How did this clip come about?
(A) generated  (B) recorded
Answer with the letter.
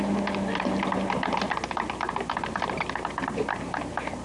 B